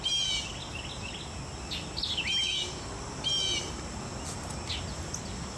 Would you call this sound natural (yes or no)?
yes